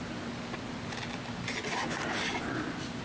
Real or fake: real